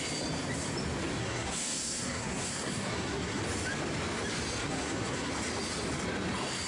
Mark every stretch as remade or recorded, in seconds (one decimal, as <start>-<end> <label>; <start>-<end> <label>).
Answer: 0.0-1.2 recorded; 1.2-3.4 remade; 3.4-4.6 recorded; 4.6-5.3 remade; 5.3-6.7 recorded